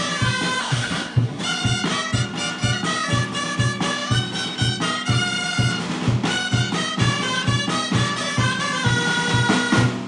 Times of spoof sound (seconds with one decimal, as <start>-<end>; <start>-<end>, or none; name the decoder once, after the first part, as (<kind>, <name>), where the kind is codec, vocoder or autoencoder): 0.6-1.4 (codec, SNAC)